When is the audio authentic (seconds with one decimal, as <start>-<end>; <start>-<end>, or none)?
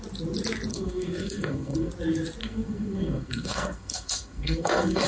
0.0-0.7; 1.9-2.4